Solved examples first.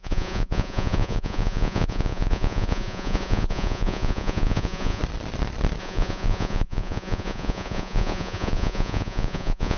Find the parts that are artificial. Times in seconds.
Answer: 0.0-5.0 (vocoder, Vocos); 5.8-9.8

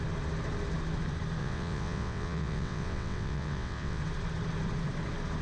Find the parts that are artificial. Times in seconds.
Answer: 1.4-4.0 (vocoder, WaveNeXt)

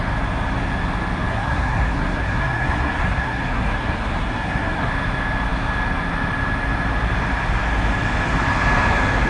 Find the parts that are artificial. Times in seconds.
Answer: 1.3-4.9 (codec, SNAC)

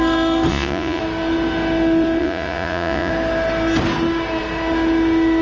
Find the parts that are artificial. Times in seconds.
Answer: 0.5-1.0 (vocoder, Vocos); 2.2-3.1

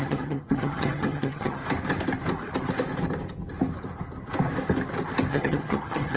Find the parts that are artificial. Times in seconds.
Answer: 0.0-1.6 (vocoder, HiFi-GAN); 5.3-6.2

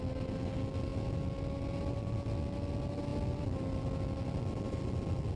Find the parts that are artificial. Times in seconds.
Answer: none